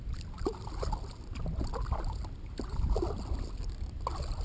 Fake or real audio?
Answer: real